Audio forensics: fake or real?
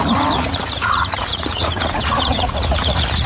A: fake